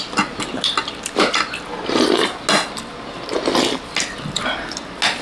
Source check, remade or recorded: recorded